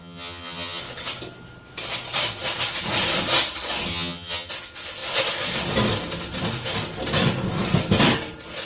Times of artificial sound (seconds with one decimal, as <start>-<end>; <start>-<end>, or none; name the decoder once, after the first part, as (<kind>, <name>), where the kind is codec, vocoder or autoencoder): 0.0-0.8 (vocoder, HiFi-GAN); 3.9-4.5